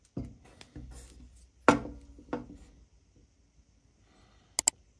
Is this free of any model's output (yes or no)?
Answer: yes